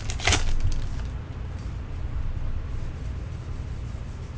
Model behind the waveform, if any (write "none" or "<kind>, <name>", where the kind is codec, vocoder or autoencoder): none